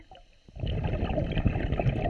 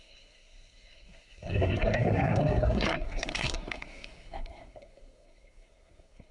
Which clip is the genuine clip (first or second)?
first